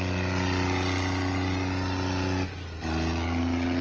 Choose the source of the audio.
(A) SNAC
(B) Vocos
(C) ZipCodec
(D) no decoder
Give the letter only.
D